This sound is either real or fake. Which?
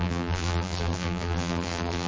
fake